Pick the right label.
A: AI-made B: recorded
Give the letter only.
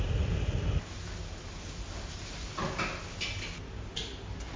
B